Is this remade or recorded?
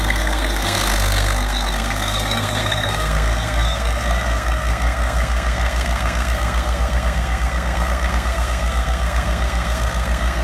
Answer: remade